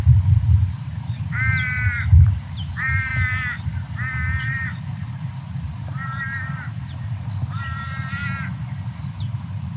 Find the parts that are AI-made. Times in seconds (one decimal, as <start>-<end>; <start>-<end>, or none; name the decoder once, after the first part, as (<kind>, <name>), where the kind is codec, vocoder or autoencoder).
0.0-3.1 (vocoder, BigVGAN v2); 4.4-8.2; 9.1-9.8